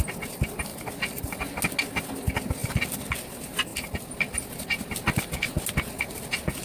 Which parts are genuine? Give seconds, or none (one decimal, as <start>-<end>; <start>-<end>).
0.0-0.7; 1.2-6.6